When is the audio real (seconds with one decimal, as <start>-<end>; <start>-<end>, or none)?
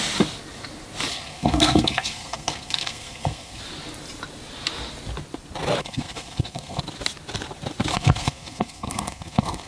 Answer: 0.0-1.1; 3.6-5.8; 6.8-7.9